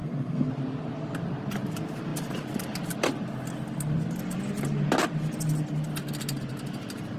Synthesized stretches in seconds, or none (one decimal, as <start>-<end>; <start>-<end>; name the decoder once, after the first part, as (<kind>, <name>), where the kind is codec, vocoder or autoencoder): 0.0-0.5 (codec, SNAC)